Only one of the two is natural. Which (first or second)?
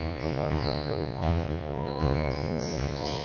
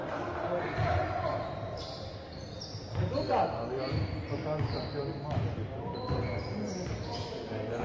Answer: second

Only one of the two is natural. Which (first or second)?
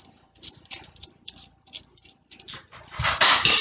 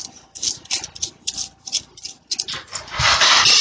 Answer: second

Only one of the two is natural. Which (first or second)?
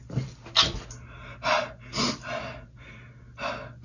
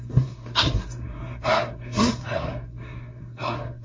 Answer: first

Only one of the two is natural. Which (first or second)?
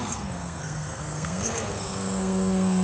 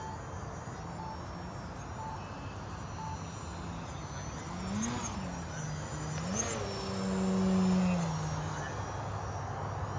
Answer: second